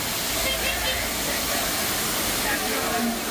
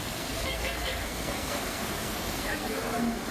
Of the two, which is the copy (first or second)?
second